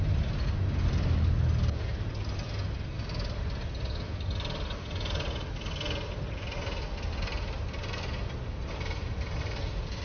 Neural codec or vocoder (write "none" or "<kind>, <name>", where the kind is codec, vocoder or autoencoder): none